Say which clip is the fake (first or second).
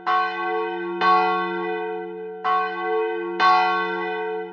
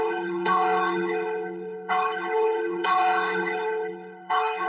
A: second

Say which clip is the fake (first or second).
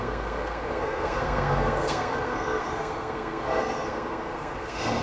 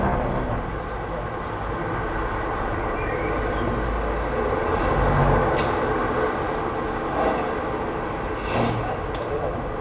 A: first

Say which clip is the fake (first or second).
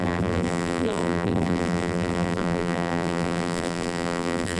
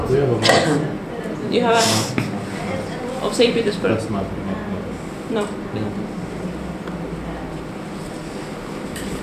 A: first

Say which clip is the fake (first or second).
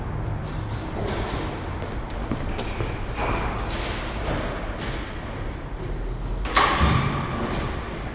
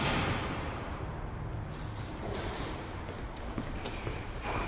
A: second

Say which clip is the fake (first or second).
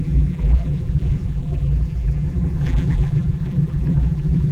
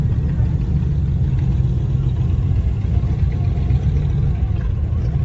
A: first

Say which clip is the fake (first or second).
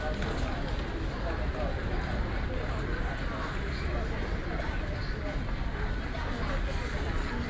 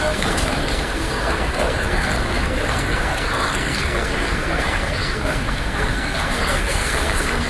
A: second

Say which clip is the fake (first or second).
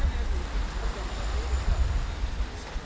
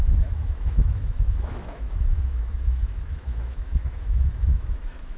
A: second